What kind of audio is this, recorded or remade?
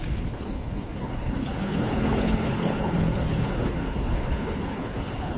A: remade